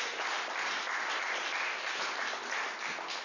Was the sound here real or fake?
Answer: real